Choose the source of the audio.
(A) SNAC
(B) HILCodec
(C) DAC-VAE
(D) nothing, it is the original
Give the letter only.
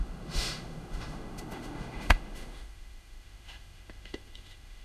C